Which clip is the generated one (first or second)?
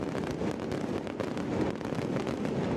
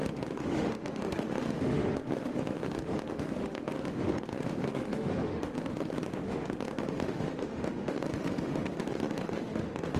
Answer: second